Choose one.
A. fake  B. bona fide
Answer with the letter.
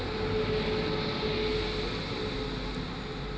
B